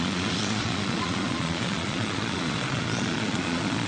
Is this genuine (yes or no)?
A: no